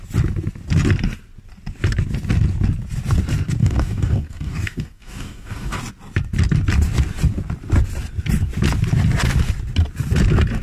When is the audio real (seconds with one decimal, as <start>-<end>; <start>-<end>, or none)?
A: 0.0-3.6; 5.8-10.6